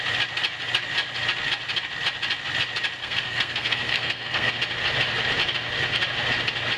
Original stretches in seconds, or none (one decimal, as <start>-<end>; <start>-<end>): 0.0-3.0; 4.5-6.8